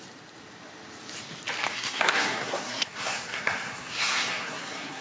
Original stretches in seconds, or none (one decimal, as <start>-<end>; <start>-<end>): 0.0-1.7